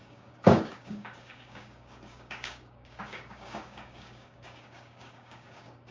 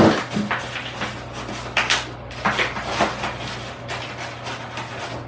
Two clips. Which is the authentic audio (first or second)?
second